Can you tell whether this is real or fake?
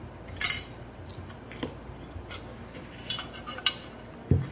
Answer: real